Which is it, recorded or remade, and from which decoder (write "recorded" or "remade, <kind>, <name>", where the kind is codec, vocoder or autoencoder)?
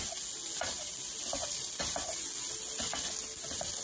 recorded